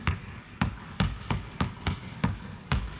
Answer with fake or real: fake